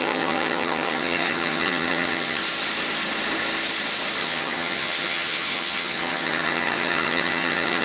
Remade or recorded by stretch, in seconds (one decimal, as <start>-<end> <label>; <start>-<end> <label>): 0.0-2.4 remade; 2.4-4.2 recorded; 4.2-7.8 remade